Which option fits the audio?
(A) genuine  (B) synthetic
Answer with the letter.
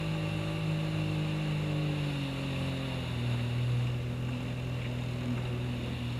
A